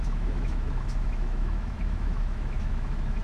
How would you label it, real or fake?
fake